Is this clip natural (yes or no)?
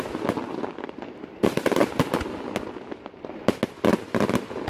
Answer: yes